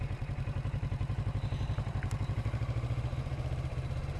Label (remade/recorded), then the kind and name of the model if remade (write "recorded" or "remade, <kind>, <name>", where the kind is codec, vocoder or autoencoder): remade, vocoder, BigVGAN v2